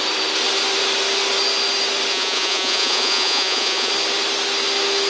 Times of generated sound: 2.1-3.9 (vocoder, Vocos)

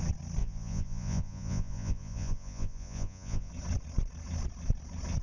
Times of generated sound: 0.4-3.5 (vocoder, Vocos)

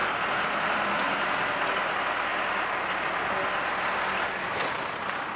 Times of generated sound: none

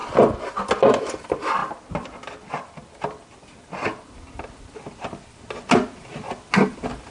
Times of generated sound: none

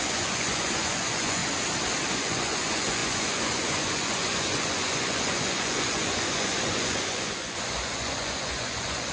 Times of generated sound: 0.0-1.4 (vocoder, Vocos); 2.1-9.1

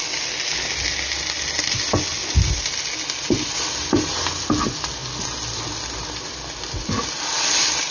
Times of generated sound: none

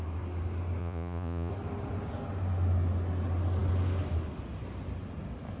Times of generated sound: 0.8-1.5 (vocoder, Vocos)

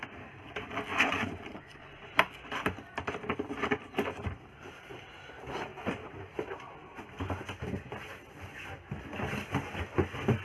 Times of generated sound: 0.9-2.1 (vocoder, Vocos)